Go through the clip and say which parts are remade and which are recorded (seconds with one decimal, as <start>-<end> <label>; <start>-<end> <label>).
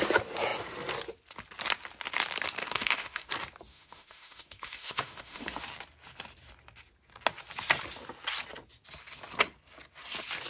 0.0-2.6 recorded; 2.6-3.3 remade; 3.3-3.7 recorded; 3.7-5.6 remade; 5.6-10.5 recorded